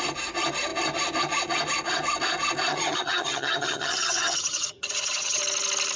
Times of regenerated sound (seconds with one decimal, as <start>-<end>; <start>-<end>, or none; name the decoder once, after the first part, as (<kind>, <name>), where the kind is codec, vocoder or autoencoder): 2.7-5.4 (vocoder, HiFi-GAN)